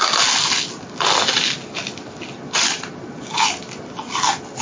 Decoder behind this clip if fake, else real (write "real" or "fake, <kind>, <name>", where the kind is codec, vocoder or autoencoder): real